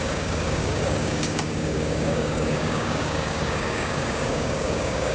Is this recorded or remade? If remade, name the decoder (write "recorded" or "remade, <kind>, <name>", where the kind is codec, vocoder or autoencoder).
remade, codec, DAC